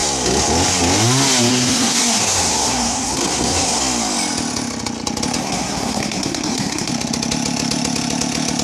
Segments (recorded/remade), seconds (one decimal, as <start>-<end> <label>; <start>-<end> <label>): 0.0-1.5 recorded; 1.5-3.8 remade; 3.8-5.4 recorded; 5.4-6.9 remade; 6.9-8.6 recorded